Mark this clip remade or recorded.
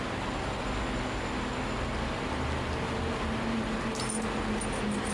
recorded